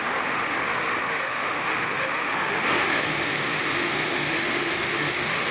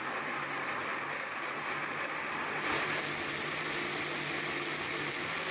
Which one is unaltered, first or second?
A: second